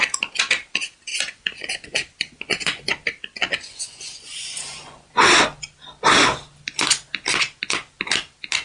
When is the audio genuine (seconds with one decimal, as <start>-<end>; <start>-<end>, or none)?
0.0-1.1; 2.9-3.4; 5.2-8.6